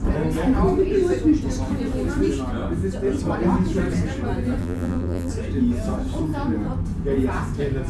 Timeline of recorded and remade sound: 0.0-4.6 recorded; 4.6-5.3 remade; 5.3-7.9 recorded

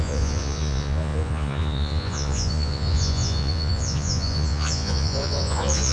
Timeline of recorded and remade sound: 0.0-5.9 remade

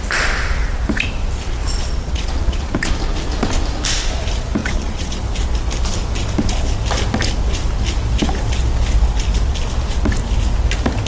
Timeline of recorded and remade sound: 0.0-1.6 recorded; 1.6-2.9 remade; 2.9-4.6 recorded; 4.6-5.2 remade; 5.2-11.1 recorded

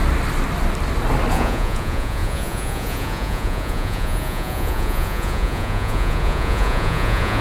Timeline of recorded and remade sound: 0.0-1.3 recorded; 1.3-7.4 remade

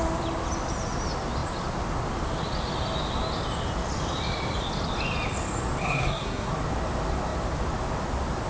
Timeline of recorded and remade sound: 0.0-5.8 recorded; 5.8-6.5 remade; 6.5-8.5 recorded